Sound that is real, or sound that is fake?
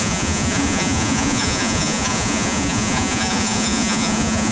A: fake